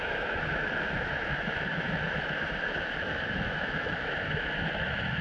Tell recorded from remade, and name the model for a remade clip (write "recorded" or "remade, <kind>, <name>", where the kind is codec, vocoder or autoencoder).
remade, autoencoder, DAC-VAE